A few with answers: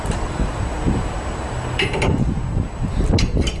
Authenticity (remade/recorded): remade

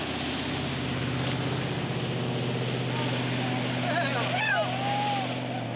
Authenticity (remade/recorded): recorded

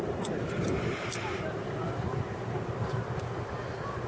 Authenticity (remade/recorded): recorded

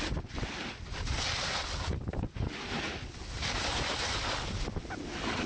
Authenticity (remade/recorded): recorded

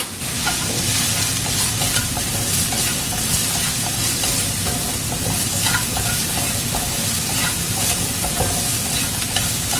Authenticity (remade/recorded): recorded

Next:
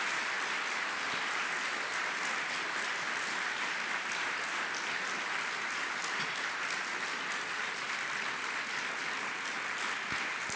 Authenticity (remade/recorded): recorded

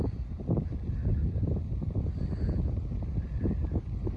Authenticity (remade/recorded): recorded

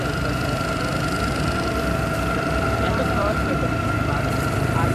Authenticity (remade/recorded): remade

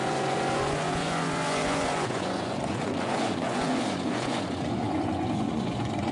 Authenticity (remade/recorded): remade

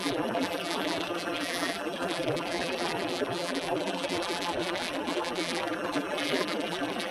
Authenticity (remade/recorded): remade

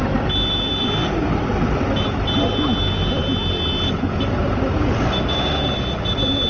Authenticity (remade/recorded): remade